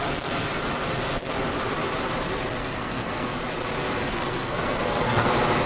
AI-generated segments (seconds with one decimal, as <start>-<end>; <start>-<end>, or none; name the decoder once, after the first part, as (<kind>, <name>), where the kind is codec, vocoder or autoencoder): 2.6-3.3 (codec, SNAC); 4.1-5.3